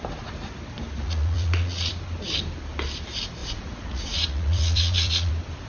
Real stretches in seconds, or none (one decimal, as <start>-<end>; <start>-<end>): 0.0-1.0; 1.9-3.4; 5.3-5.7